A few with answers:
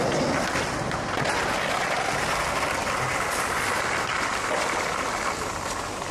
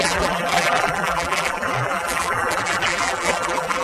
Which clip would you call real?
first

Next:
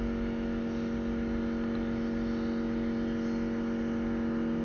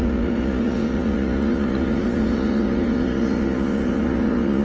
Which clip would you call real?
first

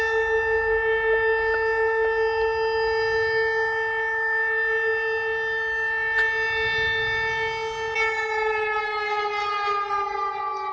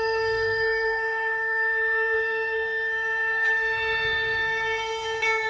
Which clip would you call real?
first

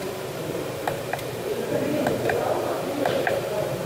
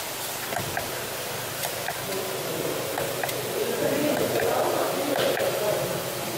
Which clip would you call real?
second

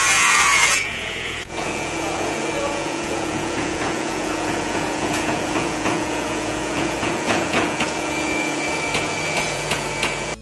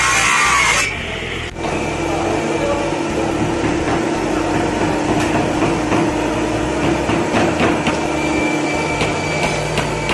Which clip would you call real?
second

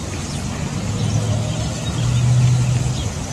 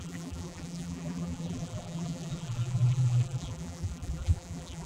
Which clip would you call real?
first